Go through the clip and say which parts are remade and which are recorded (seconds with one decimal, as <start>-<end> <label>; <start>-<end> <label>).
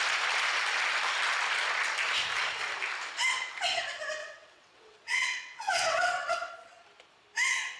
0.0-4.2 recorded; 4.2-6.5 remade; 6.5-7.8 recorded